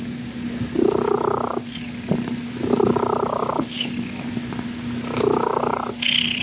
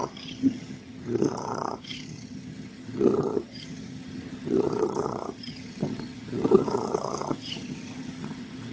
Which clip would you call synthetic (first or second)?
second